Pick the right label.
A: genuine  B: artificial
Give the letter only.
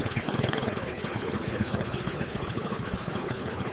B